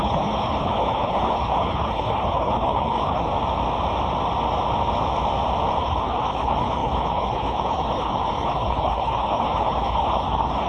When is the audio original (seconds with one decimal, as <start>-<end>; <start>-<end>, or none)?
3.3-5.8